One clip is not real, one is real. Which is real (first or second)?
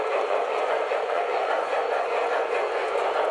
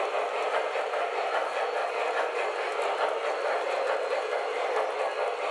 second